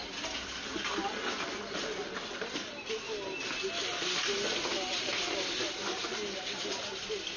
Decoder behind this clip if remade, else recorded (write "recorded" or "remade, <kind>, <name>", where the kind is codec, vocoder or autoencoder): recorded